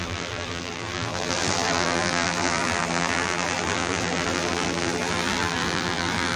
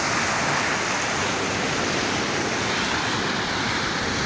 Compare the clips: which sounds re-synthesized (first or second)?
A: first